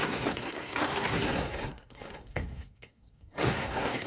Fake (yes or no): yes